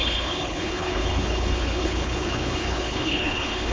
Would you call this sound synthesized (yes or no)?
yes